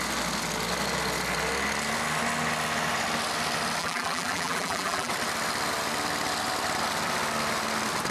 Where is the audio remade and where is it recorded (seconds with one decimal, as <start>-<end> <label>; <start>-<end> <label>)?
0.0-3.8 recorded; 3.8-5.1 remade; 5.1-8.1 recorded